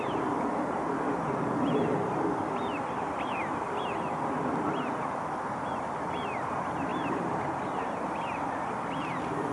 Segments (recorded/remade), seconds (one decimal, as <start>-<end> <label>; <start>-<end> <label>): 0.0-9.5 recorded